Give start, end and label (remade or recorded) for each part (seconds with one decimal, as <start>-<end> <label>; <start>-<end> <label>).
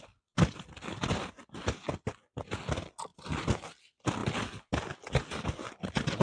0.0-6.2 recorded